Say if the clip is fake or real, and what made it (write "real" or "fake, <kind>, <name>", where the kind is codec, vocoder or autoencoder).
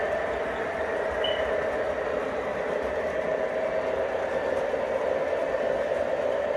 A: real